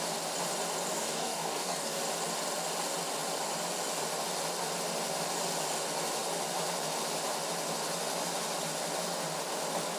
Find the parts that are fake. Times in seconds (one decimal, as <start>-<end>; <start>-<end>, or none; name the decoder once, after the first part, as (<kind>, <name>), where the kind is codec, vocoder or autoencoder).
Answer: 0.9-2.0 (codec, DAC)